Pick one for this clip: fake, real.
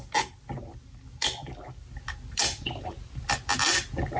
real